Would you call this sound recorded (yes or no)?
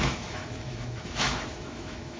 no